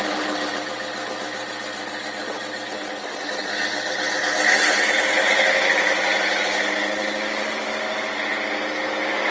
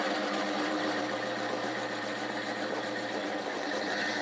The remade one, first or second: second